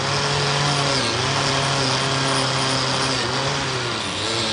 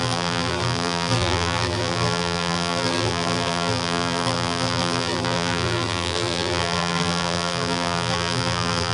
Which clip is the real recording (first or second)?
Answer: first